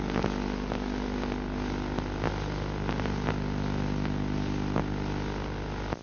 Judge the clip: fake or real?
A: real